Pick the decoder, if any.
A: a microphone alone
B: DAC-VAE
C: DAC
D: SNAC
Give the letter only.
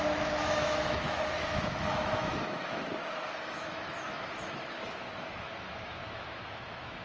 B